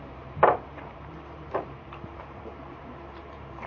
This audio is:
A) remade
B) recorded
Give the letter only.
A